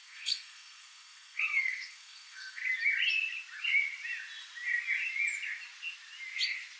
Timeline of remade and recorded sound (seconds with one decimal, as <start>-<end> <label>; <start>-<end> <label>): 0.0-2.6 remade; 2.6-6.8 recorded